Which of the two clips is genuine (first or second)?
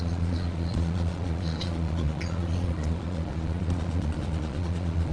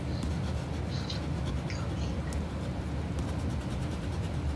second